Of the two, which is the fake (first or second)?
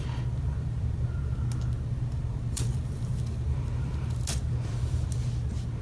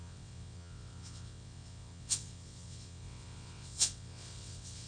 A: second